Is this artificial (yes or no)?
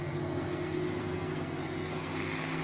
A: yes